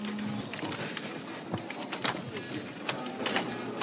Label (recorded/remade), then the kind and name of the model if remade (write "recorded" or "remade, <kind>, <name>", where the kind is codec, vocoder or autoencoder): recorded